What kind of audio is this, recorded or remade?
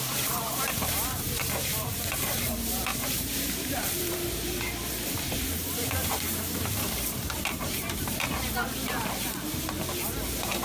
remade